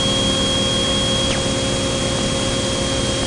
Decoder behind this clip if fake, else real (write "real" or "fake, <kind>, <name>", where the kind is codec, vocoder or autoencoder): real